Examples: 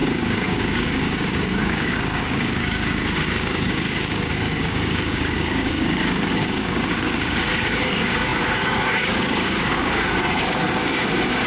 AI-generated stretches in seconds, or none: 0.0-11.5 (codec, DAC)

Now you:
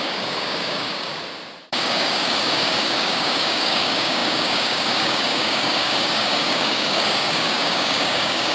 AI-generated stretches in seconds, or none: 0.0-1.1 (codec, DAC); 1.7-8.5

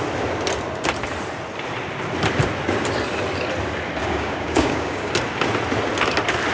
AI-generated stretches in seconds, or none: 4.0-5.1 (codec, DAC)

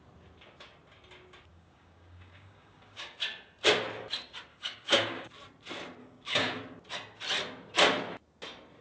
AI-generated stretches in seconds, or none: 1.5-3.2 (codec, DAC); 4.5-5.3; 6.0-6.6

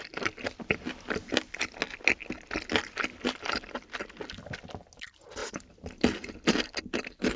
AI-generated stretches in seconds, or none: none

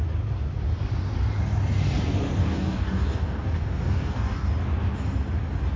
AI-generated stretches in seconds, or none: 2.4-4.5 (codec, DAC)

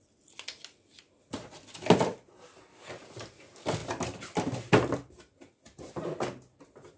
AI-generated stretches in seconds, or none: none